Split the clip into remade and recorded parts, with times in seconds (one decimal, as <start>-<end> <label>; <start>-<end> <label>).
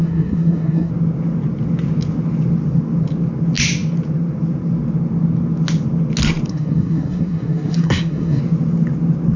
0.0-0.9 remade; 0.9-6.5 recorded; 6.5-8.4 remade; 8.4-9.4 recorded